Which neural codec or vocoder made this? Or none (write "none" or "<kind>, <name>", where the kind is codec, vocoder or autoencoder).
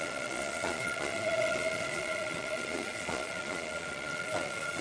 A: vocoder, Vocos